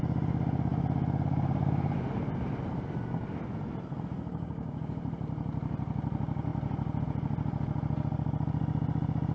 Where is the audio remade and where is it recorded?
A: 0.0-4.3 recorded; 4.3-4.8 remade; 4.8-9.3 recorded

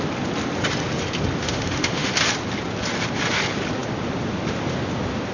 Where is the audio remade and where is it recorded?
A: 0.0-1.4 recorded; 1.4-2.1 remade; 2.1-5.3 recorded

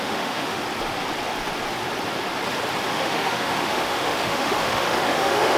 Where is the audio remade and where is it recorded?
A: 0.0-0.6 remade; 0.6-2.9 recorded; 2.9-5.6 remade

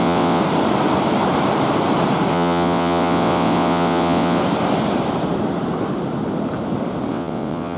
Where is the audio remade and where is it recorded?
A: 0.0-0.4 remade; 0.4-2.3 recorded; 2.3-4.4 remade; 4.4-7.1 recorded; 7.1-7.8 remade

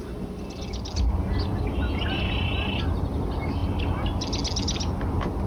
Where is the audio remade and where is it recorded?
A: 0.0-5.5 recorded

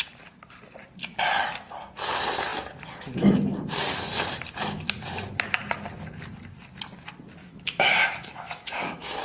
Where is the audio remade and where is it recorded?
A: 0.0-7.4 recorded; 7.4-9.2 remade

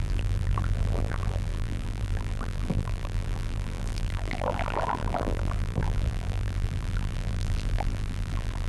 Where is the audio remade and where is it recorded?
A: 0.0-8.7 remade

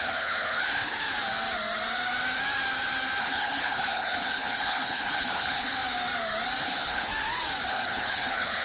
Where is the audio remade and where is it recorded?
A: 0.0-1.0 remade; 1.0-3.2 recorded; 3.2-5.7 remade; 5.7-6.6 recorded; 6.6-7.1 remade; 7.1-7.7 recorded; 7.7-8.6 remade